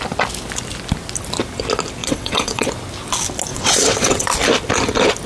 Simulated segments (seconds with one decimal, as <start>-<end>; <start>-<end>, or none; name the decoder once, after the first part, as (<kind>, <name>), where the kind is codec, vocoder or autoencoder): 2.0-2.7 (vocoder, WaveNeXt); 3.5-4.3